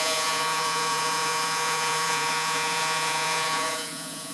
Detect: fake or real fake